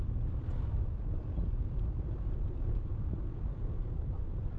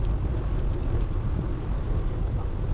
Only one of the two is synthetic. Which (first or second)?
first